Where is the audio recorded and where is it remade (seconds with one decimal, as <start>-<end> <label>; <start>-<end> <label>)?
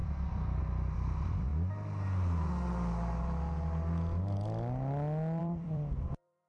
0.0-1.5 remade; 1.5-5.4 recorded; 5.4-6.5 remade